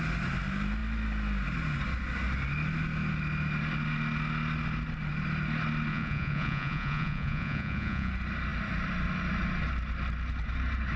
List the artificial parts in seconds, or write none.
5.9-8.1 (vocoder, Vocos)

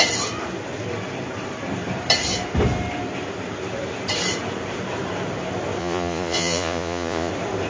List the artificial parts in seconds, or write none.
5.8-7.3 (vocoder, Vocos)

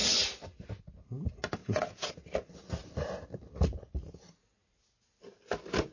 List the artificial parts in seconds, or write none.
1.6-2.1 (vocoder, Vocos)

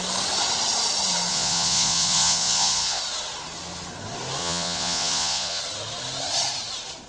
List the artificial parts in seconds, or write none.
1.3-3.0 (vocoder, Vocos); 4.4-5.6

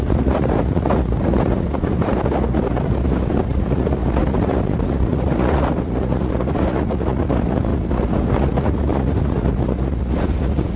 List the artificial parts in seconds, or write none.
0.0-10.8 (vocoder, Vocos)

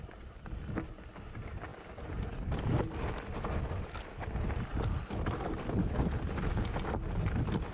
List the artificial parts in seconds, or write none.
none

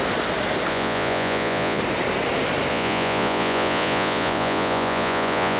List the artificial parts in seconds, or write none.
0.7-1.8 (vocoder, Vocos); 2.7-5.6